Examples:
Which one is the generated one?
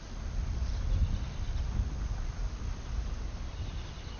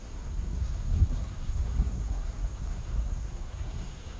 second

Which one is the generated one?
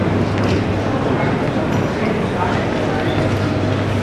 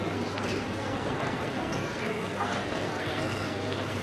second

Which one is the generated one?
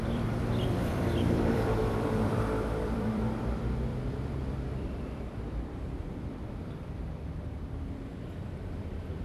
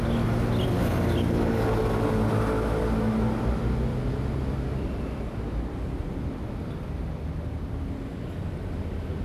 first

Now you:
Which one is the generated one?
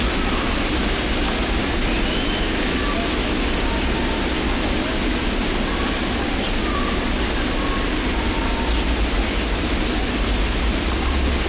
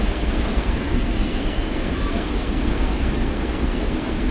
second